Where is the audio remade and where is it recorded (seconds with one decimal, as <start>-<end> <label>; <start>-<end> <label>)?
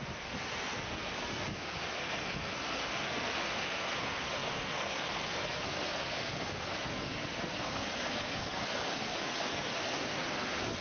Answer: 0.0-10.8 remade